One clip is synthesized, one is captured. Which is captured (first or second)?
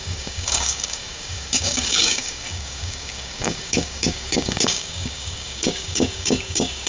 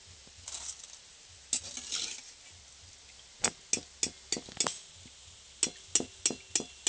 second